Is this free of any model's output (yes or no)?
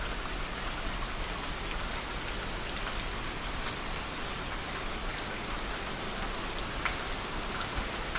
yes